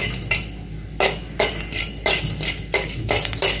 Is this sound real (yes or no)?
yes